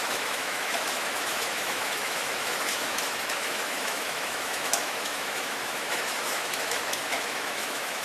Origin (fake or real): fake